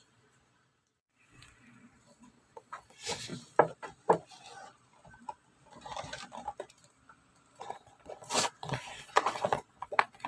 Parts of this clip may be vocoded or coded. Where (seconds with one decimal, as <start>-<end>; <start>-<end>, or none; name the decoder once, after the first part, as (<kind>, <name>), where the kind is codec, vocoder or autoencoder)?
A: 0.0-3.3 (vocoder, Vocos); 7.6-10.3